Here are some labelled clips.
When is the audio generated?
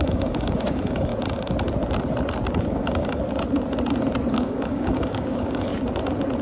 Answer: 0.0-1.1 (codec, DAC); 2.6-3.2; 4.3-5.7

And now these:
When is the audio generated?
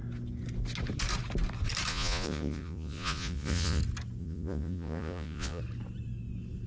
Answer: 1.9-3.8 (vocoder, Vocos); 4.2-5.6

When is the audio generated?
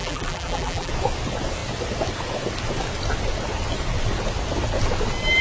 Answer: 0.0-0.9 (vocoder, BigVGAN v2)